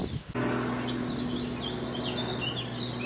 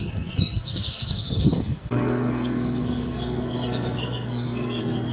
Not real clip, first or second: second